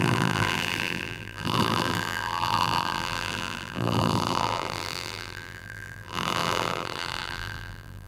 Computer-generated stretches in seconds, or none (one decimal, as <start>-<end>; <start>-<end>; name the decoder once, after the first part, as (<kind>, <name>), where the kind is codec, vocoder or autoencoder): 0.0-8.1 (vocoder, BigVGAN v2)